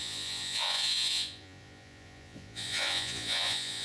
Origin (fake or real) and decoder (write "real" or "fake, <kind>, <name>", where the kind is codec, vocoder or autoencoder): fake, vocoder, Vocos